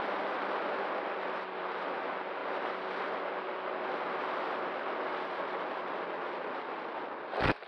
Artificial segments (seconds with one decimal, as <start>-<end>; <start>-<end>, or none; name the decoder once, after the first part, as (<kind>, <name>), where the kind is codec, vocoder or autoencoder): none